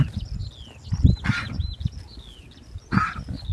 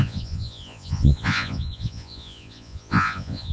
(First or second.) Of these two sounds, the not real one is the second